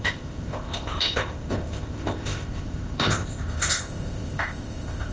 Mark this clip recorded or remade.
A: remade